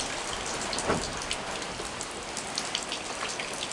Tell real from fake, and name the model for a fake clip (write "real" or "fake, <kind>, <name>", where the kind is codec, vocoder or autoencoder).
real